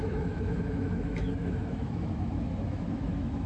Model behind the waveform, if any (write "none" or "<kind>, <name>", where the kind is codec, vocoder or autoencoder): autoencoder, DAC-VAE